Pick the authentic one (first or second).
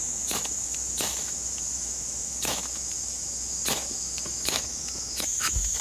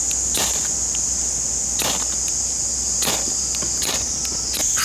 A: second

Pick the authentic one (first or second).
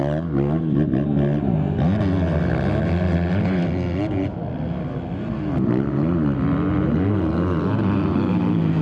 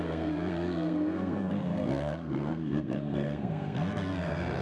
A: first